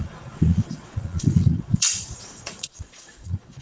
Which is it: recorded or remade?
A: remade